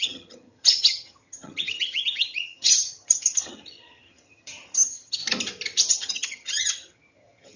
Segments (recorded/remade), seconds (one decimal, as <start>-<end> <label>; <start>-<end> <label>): 0.0-5.2 remade; 5.2-5.9 recorded; 5.9-7.6 remade